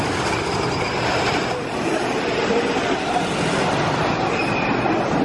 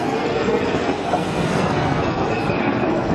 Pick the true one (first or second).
first